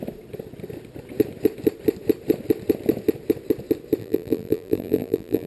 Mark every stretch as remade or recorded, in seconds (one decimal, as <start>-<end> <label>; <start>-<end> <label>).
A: 0.0-4.0 recorded; 4.0-5.5 remade

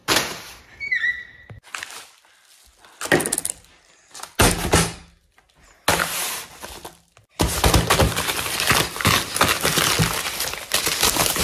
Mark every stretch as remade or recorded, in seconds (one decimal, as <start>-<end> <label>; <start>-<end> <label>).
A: 0.0-0.6 remade; 0.6-11.4 recorded

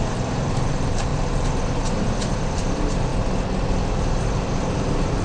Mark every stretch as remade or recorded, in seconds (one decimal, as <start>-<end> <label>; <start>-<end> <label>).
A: 0.0-3.1 remade; 3.1-3.8 recorded; 3.8-5.2 remade

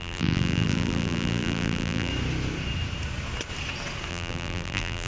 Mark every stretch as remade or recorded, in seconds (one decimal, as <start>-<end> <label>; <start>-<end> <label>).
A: 0.0-2.1 remade; 2.1-4.1 recorded; 4.1-5.1 remade

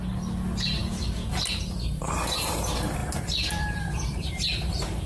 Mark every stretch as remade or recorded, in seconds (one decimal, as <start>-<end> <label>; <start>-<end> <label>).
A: 0.0-3.0 recorded; 3.0-4.3 remade; 4.3-5.1 recorded

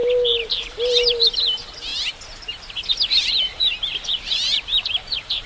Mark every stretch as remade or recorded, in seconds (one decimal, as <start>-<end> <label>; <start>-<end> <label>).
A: 0.0-0.6 recorded; 0.6-1.9 remade; 1.9-3.1 recorded; 3.1-5.5 remade

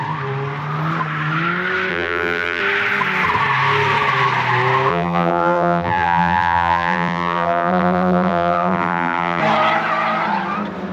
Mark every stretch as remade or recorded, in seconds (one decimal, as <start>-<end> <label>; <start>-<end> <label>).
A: 0.0-1.9 recorded; 1.9-2.6 remade; 2.6-4.9 recorded; 4.9-9.4 remade; 9.4-10.9 recorded